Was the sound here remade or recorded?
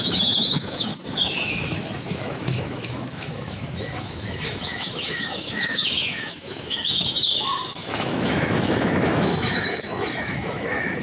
remade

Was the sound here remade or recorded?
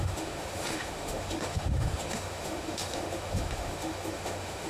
remade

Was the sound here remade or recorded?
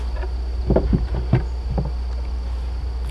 recorded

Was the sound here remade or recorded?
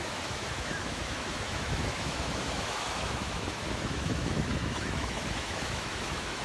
remade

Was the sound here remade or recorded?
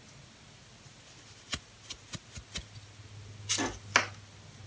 recorded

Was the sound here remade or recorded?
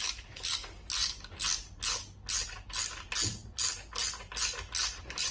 recorded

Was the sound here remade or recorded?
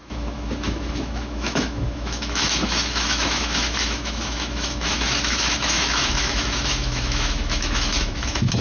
remade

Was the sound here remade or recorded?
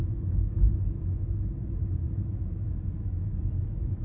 remade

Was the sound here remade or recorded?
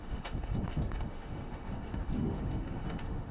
remade